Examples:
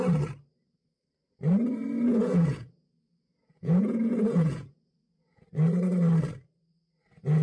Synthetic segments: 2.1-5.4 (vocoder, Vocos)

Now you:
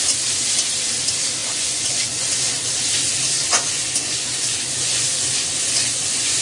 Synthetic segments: 1.4-2.7 (vocoder, Vocos); 3.5-6.4